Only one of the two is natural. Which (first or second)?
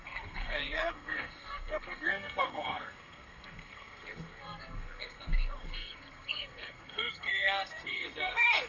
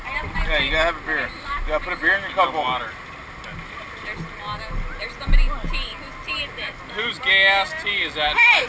second